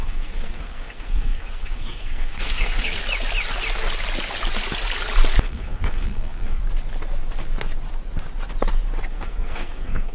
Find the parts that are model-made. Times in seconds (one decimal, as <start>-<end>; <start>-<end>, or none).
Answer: 0.0-3.0; 5.4-6.6; 9.1-10.1